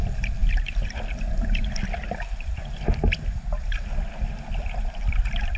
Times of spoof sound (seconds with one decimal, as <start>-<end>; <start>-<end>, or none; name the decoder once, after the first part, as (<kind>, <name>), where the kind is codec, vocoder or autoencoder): none